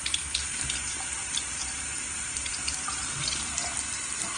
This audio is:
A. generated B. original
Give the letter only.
A